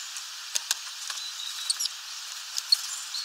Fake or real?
real